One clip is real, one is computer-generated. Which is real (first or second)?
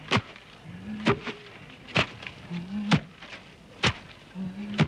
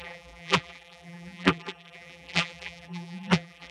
first